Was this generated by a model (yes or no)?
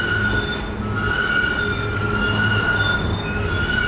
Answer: no